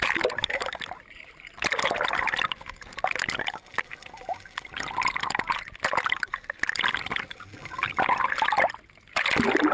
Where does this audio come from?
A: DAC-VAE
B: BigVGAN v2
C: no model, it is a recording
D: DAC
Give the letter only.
C